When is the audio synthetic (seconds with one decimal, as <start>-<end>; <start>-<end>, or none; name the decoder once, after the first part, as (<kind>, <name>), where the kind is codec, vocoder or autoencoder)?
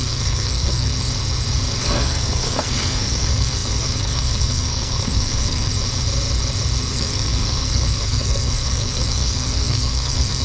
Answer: 0.0-0.9 (codec, SNAC); 1.8-5.7; 6.9-10.4